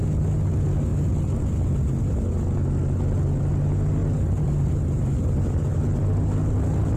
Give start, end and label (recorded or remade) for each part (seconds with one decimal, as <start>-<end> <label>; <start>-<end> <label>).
0.0-4.0 recorded; 4.0-5.8 remade; 5.8-7.0 recorded